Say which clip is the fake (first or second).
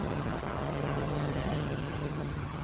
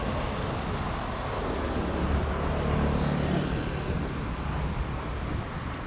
first